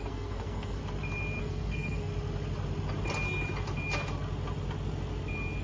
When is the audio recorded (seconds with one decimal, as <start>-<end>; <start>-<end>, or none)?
0.8-1.4; 2.1-5.6